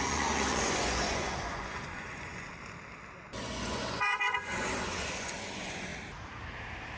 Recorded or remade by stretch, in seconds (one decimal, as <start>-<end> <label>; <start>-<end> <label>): 0.0-2.5 remade; 2.5-3.2 recorded; 3.2-5.9 remade; 5.9-7.0 recorded

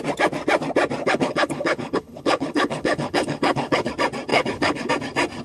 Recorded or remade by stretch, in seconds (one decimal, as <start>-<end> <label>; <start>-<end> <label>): 0.0-1.0 recorded; 1.0-3.9 remade; 3.9-4.3 recorded; 4.3-4.9 remade; 4.9-5.4 recorded